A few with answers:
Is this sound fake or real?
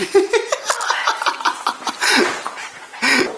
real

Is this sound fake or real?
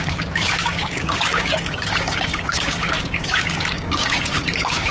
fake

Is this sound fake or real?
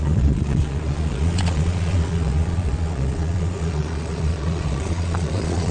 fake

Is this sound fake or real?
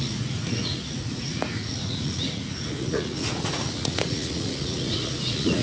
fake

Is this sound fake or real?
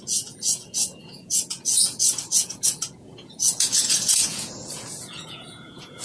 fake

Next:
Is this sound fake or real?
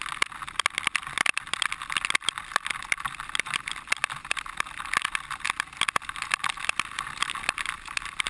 real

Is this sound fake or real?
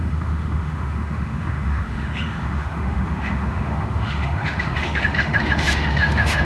fake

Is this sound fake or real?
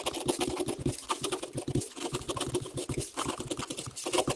real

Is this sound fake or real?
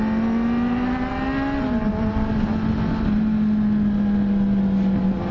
real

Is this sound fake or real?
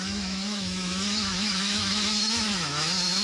fake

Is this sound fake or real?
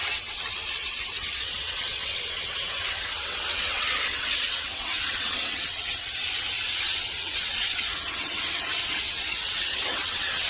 fake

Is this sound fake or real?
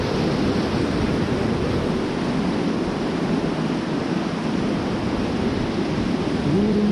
real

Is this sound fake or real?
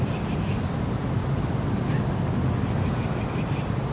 real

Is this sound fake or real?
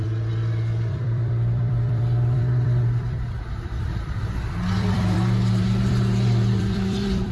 fake